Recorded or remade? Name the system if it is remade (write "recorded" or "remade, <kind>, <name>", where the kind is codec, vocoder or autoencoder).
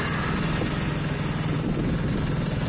recorded